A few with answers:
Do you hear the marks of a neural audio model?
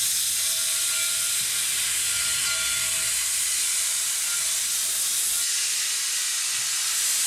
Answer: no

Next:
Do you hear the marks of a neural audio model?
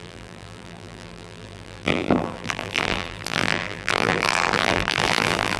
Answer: yes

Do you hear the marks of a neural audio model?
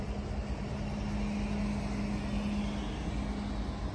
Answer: no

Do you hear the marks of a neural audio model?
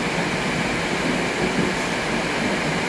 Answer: no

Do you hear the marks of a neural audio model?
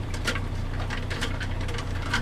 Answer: yes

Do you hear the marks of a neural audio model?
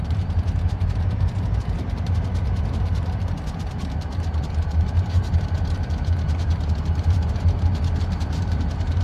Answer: yes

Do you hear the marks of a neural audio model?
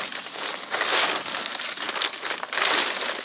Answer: no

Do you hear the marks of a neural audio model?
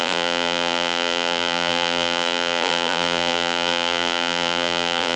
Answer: yes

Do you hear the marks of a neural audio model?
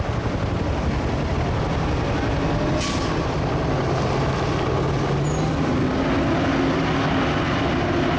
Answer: no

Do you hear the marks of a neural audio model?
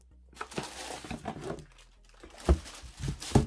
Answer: no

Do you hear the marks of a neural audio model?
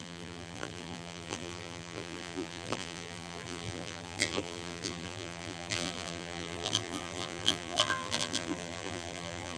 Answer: yes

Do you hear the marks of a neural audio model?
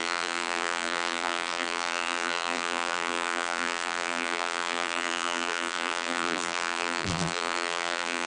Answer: yes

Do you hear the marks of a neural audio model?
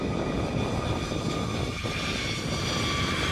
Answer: no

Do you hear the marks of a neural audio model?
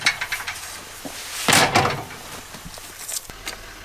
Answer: no